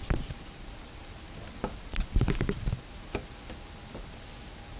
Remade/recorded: recorded